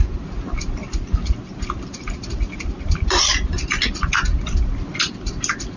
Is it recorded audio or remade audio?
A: recorded